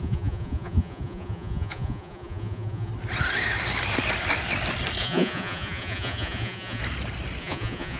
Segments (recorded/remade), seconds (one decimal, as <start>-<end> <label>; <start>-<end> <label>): 0.0-2.9 remade; 2.9-5.0 recorded; 5.0-6.8 remade; 6.8-7.4 recorded; 7.4-8.0 remade